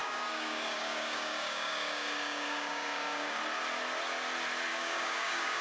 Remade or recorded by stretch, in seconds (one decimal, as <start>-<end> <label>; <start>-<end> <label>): 0.0-3.4 remade; 3.4-4.7 recorded; 4.7-5.6 remade